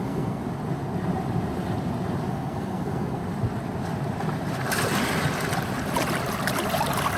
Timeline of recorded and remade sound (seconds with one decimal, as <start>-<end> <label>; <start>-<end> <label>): 0.0-0.4 remade; 0.4-2.3 recorded; 2.3-3.2 remade; 3.2-7.2 recorded